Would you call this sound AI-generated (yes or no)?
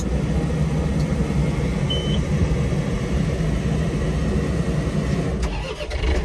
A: no